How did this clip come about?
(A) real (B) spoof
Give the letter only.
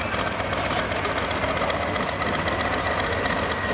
A